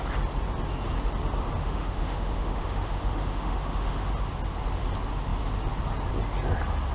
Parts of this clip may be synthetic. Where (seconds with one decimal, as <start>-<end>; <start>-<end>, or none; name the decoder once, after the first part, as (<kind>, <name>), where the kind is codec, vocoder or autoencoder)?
1.6-4.1 (autoencoder, DAC-VAE)